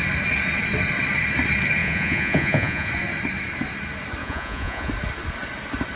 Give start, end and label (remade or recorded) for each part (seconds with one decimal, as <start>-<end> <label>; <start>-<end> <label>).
0.0-1.8 recorded; 1.8-2.9 remade; 2.9-4.2 recorded; 4.2-4.9 remade; 4.9-6.0 recorded